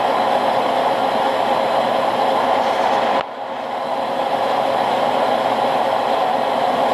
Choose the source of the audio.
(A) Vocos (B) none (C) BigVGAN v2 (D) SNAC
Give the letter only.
B